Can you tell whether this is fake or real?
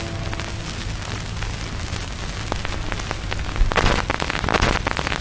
real